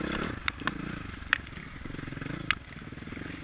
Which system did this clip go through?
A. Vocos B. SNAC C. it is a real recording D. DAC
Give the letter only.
C